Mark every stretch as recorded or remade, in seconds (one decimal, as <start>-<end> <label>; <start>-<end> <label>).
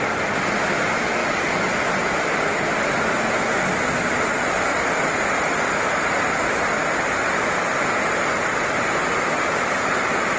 0.0-10.4 recorded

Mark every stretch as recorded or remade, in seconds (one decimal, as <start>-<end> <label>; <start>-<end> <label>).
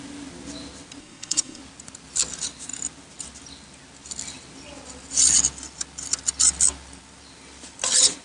0.0-1.0 recorded; 1.0-1.6 remade; 1.6-8.2 recorded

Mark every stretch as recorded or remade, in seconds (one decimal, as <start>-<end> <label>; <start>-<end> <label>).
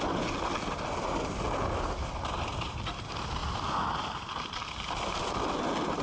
0.0-6.0 recorded